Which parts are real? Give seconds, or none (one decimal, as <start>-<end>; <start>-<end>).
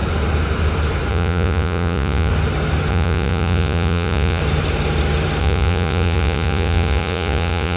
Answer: 0.0-1.1; 2.3-2.9; 4.4-5.4